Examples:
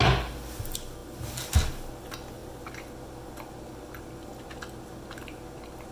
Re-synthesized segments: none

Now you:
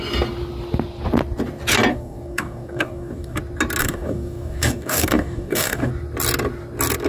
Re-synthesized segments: 1.9-3.4 (codec, DAC); 3.8-5.9

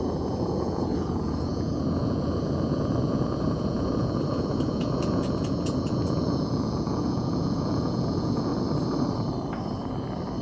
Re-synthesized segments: 0.0-8.5 (vocoder, Vocos)

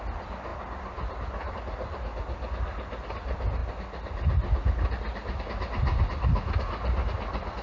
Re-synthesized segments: none

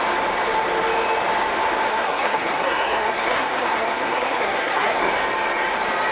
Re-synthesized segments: 1.9-5.1 (codec, SNAC)